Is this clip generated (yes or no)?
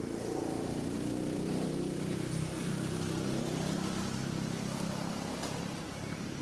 yes